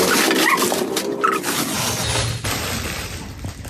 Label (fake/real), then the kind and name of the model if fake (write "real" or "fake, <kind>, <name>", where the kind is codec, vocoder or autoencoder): real